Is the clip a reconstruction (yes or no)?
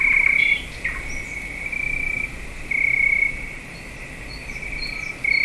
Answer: no